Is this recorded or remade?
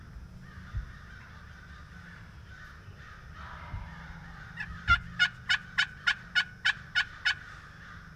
recorded